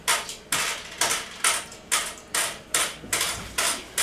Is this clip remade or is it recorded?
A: recorded